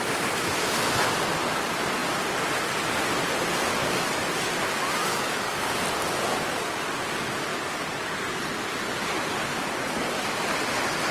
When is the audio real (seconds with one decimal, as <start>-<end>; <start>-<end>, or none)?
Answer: 0.0-3.8; 4.6-5.1; 5.8-7.5; 8.4-11.1